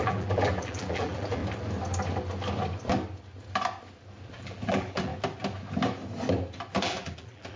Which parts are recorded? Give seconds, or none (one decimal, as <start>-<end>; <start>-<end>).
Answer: 1.4-4.3; 5.1-6.8